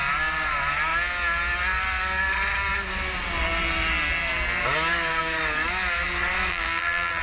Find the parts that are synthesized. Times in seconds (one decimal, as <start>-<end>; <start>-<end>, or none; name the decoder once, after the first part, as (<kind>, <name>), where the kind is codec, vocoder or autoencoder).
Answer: 6.5-7.2 (vocoder, BigVGAN v2)